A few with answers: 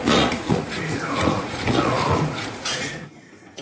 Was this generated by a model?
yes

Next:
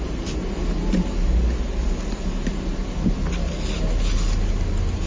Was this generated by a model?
no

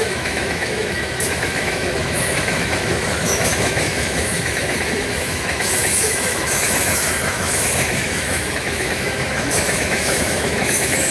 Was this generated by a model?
yes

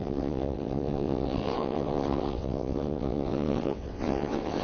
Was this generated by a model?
yes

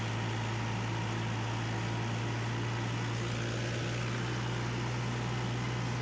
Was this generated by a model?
no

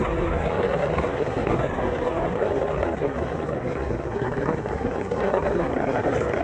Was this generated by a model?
yes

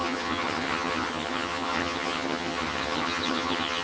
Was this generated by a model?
yes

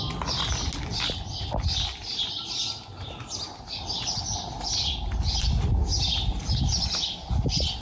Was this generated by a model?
no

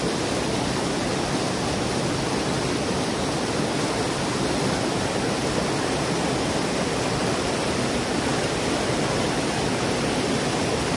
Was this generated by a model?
no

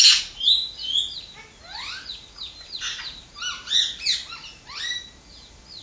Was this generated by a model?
no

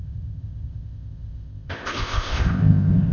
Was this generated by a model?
yes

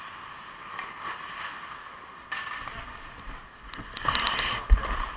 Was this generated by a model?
no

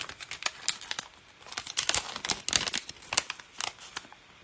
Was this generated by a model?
no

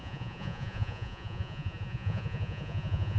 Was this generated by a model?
yes